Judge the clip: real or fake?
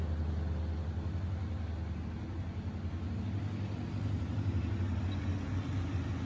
real